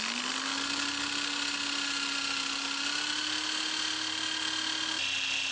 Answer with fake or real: real